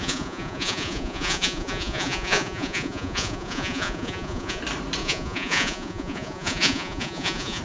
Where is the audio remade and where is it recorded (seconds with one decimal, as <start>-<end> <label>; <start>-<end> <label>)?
0.0-4.6 remade; 4.6-5.0 recorded; 5.0-7.6 remade

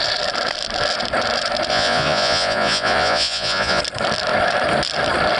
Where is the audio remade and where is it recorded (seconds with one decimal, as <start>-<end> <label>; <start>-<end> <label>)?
0.0-1.7 recorded; 1.7-3.8 remade; 3.8-5.4 recorded

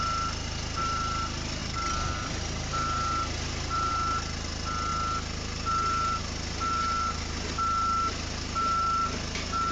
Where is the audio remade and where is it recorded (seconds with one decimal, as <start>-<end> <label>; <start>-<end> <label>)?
0.0-9.7 recorded

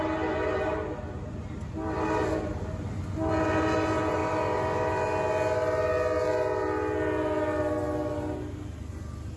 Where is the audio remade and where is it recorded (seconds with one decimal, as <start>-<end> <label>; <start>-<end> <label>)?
0.0-9.4 recorded

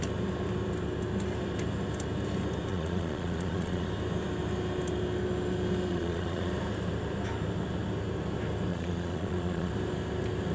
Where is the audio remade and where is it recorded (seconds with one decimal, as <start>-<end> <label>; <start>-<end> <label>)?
0.0-2.7 recorded; 2.7-3.9 remade; 3.9-5.9 recorded; 5.9-6.5 remade; 6.5-8.7 recorded; 8.7-9.7 remade; 9.7-10.5 recorded

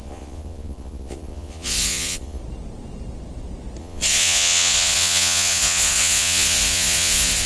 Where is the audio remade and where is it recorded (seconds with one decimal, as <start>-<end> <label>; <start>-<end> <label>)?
0.0-2.4 remade; 2.4-3.8 recorded; 3.8-7.5 remade

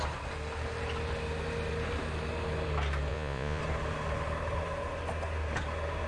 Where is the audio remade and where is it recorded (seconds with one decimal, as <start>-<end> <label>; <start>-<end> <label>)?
0.0-3.1 recorded; 3.1-3.6 remade; 3.6-6.1 recorded